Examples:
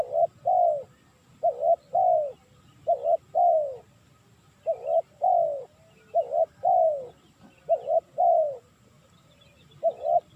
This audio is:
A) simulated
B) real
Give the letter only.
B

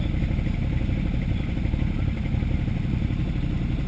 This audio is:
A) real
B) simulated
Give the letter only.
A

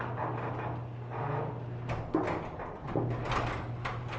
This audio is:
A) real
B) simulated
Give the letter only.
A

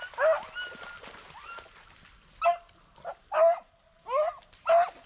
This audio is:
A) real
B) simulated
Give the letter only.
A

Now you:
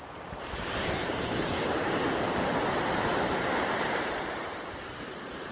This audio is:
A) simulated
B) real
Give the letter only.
A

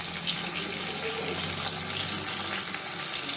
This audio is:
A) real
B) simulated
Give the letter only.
A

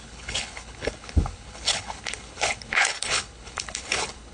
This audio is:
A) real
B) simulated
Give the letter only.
B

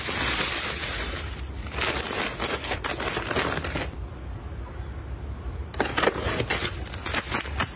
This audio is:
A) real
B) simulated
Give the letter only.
A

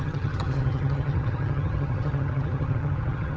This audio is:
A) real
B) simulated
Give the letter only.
B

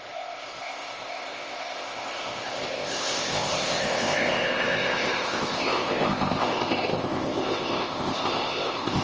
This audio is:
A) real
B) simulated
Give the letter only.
B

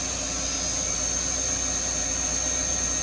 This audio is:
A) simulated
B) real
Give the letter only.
B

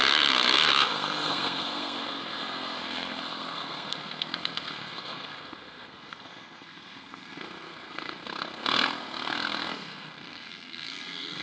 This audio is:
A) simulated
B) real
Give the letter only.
A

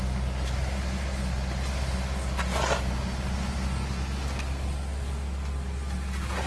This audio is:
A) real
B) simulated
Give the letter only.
A